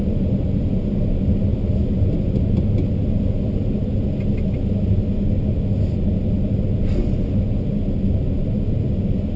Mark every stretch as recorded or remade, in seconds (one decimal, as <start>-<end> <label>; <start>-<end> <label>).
0.0-9.4 recorded